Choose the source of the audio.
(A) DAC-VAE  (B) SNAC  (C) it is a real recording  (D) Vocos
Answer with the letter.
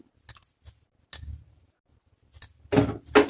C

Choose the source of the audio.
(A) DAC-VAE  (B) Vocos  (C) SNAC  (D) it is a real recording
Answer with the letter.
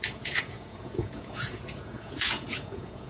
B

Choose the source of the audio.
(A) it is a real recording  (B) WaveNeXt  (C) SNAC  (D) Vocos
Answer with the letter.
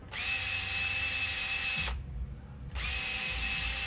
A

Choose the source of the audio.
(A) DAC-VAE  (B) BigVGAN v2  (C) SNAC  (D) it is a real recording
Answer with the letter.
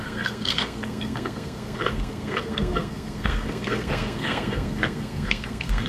C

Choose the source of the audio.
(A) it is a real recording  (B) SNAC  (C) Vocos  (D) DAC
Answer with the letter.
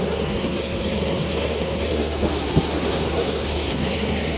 B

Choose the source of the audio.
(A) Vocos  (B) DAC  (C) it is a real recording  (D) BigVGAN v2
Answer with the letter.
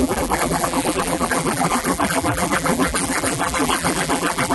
D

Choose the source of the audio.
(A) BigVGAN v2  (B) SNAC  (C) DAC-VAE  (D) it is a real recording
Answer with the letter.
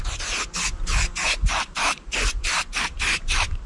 A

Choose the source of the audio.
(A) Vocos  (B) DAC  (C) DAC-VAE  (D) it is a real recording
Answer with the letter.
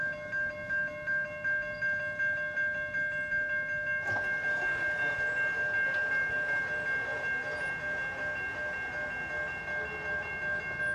D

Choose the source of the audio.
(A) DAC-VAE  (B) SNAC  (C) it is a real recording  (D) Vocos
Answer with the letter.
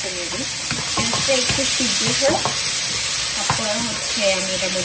C